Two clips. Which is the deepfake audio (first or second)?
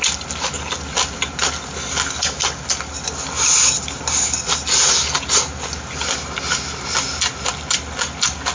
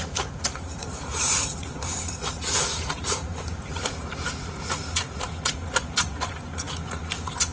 second